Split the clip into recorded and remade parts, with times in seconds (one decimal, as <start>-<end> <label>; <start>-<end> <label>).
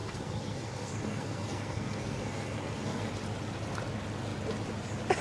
0.0-3.1 remade; 3.1-5.2 recorded